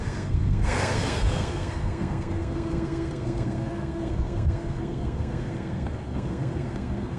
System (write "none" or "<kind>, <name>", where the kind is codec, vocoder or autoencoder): codec, SNAC